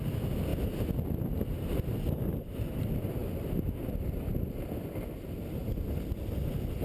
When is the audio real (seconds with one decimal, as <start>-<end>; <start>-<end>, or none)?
0.0-6.8